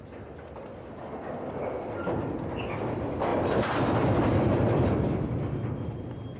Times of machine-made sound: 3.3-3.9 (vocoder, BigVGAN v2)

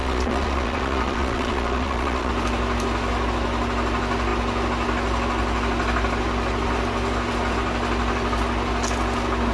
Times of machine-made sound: 0.0-2.3 (vocoder, Vocos)

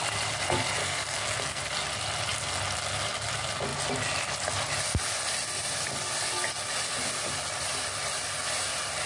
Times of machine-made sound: 0.8-1.6 (codec, SNAC)

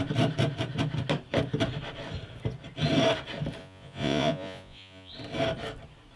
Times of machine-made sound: 3.6-5.1 (vocoder, Vocos)

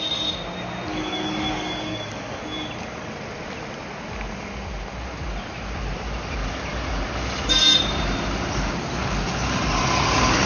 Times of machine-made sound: 0.9-2.4 (codec, DAC)